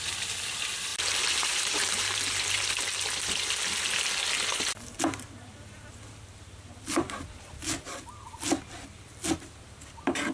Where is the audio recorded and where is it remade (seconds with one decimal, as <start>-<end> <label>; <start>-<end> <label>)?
0.0-0.9 recorded; 0.9-2.2 remade; 2.2-10.3 recorded